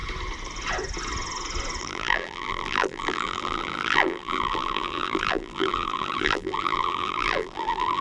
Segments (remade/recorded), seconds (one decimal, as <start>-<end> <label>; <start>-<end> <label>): 0.0-1.8 recorded; 1.8-8.0 remade